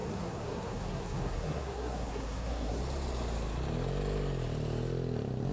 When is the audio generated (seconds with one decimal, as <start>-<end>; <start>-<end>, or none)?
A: 0.0-2.8